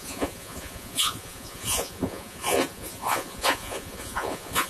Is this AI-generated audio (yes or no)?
yes